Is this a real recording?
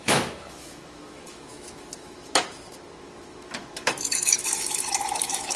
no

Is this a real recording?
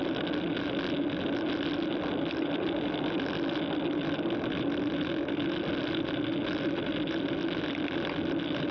yes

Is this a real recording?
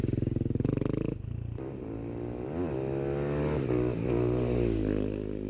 yes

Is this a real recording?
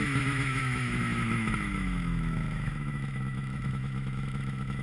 no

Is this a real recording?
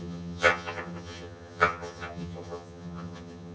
no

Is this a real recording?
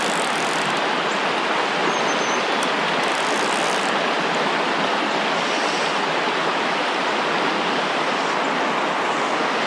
yes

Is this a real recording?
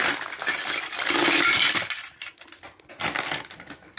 yes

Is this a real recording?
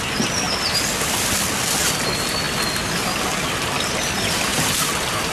yes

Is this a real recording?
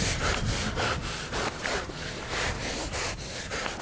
yes